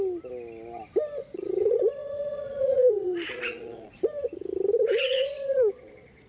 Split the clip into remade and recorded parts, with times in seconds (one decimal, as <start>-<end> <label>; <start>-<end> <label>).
0.0-1.2 recorded; 1.2-4.0 remade; 4.0-4.9 recorded; 4.9-6.3 remade